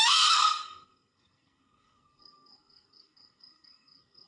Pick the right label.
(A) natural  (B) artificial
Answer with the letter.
B